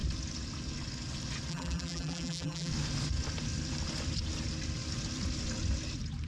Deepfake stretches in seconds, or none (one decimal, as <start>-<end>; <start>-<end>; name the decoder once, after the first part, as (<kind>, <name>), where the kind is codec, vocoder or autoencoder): 1.5-2.7 (vocoder, BigVGAN v2)